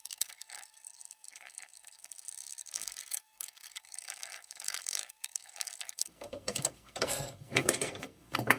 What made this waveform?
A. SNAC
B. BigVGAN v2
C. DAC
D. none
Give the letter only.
A